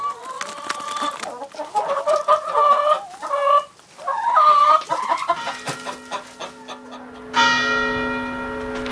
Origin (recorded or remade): recorded